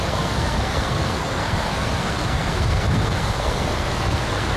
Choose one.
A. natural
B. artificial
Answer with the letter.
B